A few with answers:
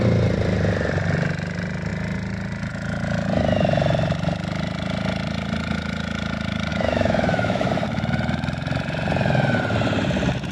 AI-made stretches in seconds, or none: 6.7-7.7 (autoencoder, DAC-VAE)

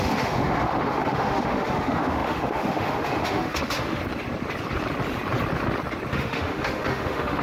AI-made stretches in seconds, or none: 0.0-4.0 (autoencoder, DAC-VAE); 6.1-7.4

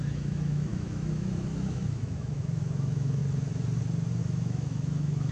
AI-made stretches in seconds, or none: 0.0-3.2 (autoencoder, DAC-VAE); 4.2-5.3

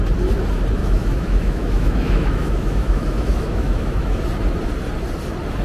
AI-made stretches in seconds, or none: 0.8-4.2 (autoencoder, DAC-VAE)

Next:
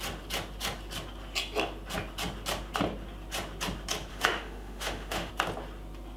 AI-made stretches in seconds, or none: 4.1-5.3 (autoencoder, DAC-VAE)

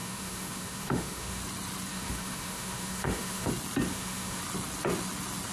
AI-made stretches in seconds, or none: 0.0-1.4 (autoencoder, DAC-VAE); 1.9-3.5; 3.9-4.4